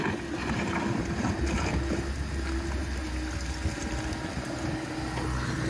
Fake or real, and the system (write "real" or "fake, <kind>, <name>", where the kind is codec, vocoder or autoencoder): real